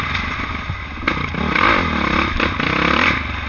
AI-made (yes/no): no